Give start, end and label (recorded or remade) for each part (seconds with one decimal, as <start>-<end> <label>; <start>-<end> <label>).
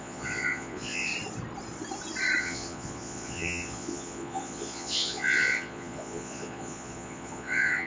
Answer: 0.0-1.1 remade; 1.1-2.4 recorded; 2.4-7.9 remade